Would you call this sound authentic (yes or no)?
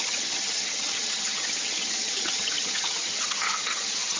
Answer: no